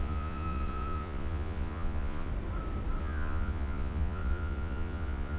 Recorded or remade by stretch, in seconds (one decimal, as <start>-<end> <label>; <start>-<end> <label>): 0.0-2.3 remade; 2.3-3.0 recorded; 3.0-5.4 remade